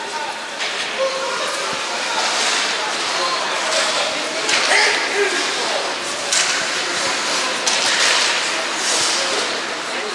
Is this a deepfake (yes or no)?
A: no